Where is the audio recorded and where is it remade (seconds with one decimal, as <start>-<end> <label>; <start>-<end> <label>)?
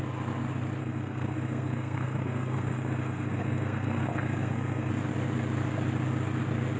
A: 0.0-0.8 recorded; 0.8-4.9 remade; 4.9-6.8 recorded